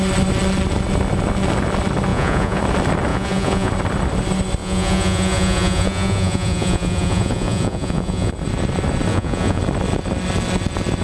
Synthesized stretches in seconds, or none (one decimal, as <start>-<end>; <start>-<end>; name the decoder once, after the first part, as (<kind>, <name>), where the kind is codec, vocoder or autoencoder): 2.1-2.6 (vocoder, Vocos); 3.1-3.7; 4.6-8.3; 9.1-9.6